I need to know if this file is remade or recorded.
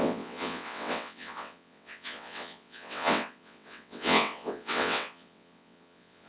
remade